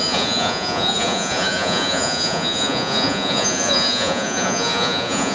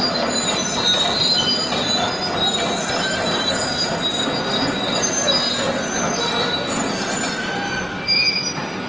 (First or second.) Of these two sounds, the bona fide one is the second